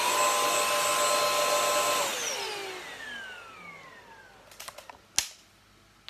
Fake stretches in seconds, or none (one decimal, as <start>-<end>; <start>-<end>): none